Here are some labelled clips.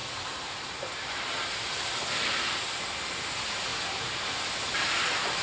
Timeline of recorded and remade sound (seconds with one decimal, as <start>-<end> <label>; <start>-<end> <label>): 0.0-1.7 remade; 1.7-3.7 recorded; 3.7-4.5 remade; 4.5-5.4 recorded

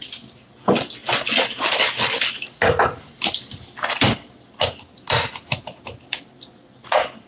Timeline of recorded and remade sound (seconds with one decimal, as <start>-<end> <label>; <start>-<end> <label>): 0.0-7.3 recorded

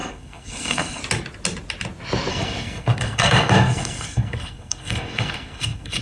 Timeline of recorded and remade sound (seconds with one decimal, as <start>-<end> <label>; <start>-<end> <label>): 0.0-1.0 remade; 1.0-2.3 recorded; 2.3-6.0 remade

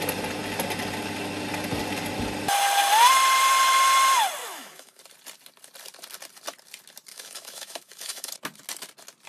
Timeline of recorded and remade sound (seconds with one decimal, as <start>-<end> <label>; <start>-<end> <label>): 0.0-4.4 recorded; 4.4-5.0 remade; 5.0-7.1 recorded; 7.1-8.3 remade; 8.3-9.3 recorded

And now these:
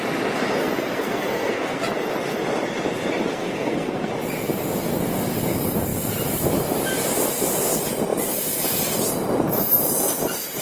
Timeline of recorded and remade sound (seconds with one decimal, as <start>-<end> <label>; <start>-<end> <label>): 0.0-0.6 recorded; 0.6-1.8 remade; 1.8-3.3 recorded; 3.3-4.1 remade; 4.1-10.6 recorded

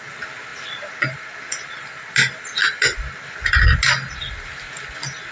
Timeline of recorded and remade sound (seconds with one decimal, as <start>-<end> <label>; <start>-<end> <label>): 0.0-2.6 recorded; 2.6-3.1 remade; 3.1-5.3 recorded

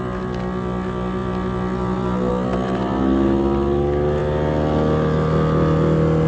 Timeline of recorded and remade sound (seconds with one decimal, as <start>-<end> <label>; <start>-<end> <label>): 0.0-6.3 recorded